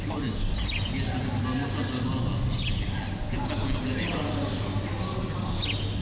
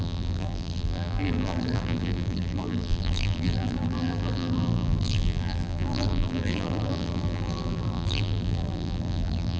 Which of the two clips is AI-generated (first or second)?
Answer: second